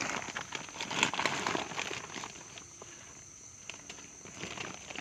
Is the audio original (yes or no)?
yes